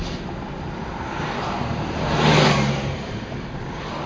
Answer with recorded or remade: remade